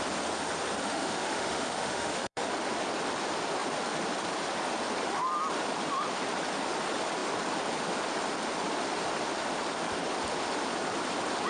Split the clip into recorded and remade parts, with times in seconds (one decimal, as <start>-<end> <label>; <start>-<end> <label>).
0.0-0.8 recorded; 0.8-2.5 remade; 2.5-11.5 recorded